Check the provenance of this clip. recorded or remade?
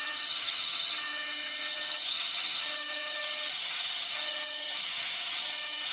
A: remade